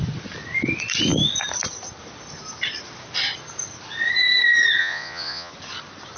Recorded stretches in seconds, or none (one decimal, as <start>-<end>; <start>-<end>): 0.0-4.8; 5.5-6.2